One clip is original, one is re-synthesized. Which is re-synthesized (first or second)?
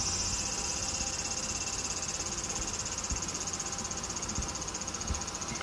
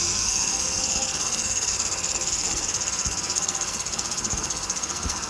second